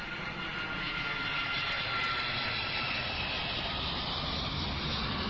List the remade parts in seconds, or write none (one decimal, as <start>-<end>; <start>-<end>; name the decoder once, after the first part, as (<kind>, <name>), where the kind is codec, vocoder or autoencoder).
none